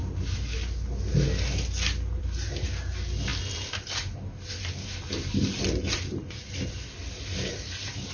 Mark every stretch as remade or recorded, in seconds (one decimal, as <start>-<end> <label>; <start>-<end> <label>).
0.0-8.1 recorded